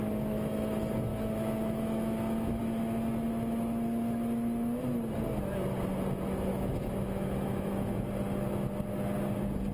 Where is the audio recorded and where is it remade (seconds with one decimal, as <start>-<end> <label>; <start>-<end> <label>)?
0.0-1.1 recorded; 1.1-2.6 remade; 2.6-6.5 recorded; 6.5-7.7 remade; 7.7-9.7 recorded